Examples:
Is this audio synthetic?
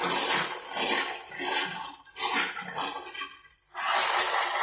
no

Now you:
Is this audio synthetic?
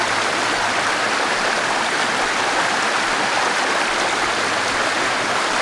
yes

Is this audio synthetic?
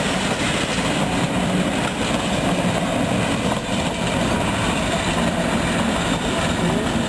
no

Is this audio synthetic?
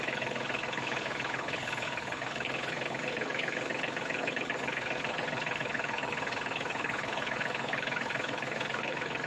yes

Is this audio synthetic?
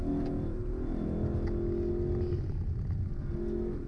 no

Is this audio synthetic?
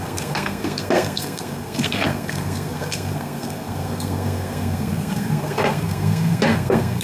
yes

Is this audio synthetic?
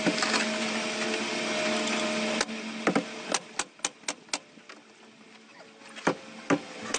no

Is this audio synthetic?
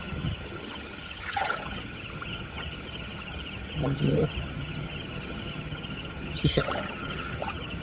yes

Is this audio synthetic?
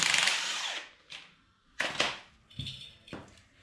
no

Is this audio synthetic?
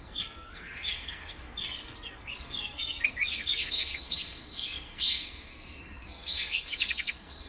yes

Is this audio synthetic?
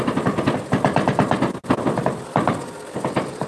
no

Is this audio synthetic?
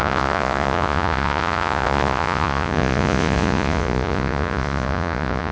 yes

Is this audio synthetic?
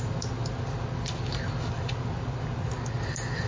no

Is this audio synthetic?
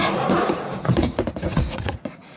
yes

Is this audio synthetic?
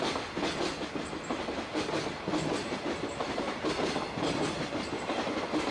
no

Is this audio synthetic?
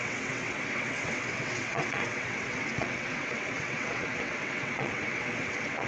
yes